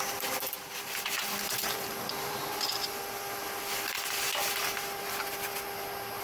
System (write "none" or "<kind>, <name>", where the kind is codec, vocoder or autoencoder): none